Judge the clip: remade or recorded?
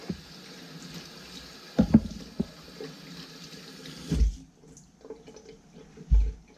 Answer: recorded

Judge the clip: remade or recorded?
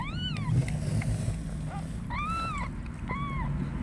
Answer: recorded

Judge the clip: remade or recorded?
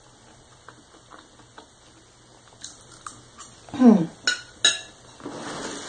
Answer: recorded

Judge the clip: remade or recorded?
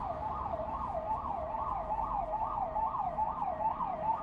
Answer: recorded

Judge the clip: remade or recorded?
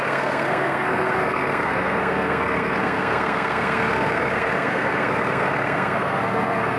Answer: remade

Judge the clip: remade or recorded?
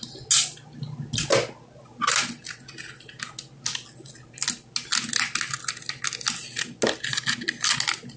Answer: recorded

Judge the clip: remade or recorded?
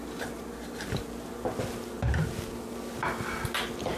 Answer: recorded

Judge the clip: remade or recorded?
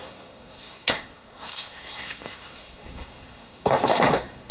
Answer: remade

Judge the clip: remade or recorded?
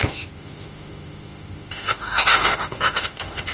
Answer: remade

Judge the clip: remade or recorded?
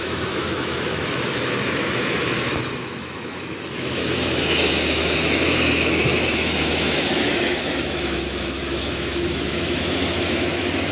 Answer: remade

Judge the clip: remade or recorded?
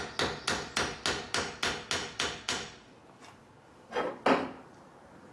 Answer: recorded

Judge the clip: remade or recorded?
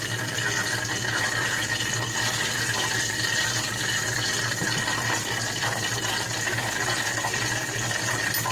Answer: recorded